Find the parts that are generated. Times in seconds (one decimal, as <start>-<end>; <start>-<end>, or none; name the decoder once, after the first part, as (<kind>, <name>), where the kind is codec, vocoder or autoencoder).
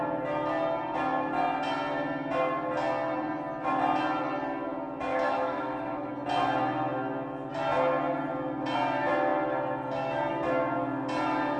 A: 5.1-6.1 (autoencoder, DAC-VAE)